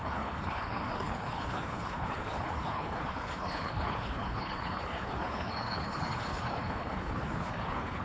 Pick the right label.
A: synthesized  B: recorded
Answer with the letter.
A